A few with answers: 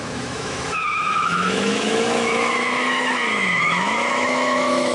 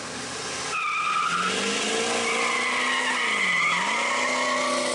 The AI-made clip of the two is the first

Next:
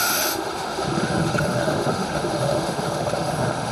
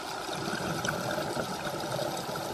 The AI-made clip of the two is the first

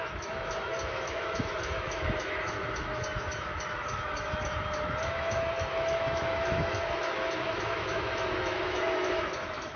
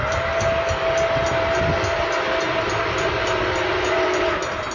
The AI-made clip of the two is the first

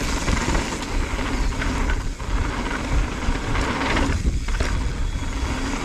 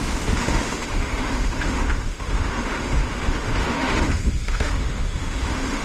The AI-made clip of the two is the second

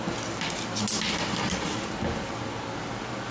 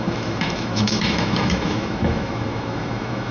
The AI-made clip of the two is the second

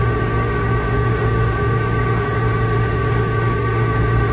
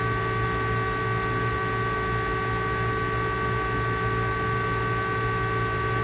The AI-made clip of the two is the first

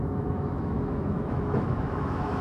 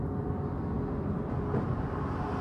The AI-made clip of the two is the first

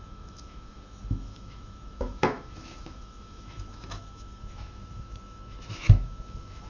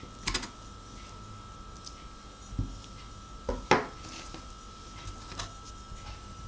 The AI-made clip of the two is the first